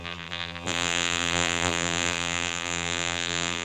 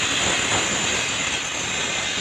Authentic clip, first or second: second